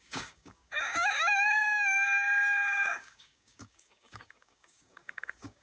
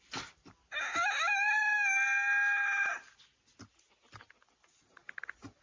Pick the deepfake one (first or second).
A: first